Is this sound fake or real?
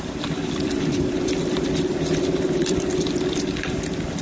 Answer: fake